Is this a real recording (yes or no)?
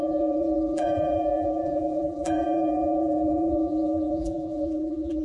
no